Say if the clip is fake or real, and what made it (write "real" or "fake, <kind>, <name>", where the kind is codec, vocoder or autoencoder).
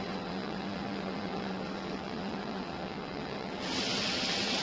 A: fake, vocoder, WaveNeXt